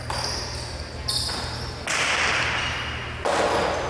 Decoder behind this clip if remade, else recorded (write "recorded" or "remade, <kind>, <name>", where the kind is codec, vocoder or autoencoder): recorded